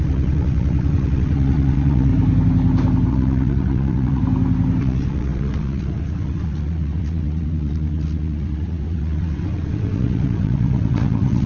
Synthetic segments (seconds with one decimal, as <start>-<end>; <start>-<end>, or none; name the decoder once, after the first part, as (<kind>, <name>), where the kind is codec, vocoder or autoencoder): 0.0-2.1 (vocoder, WaveNeXt); 3.1-4.2; 4.8-11.5